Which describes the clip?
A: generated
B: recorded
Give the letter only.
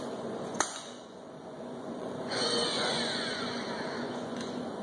A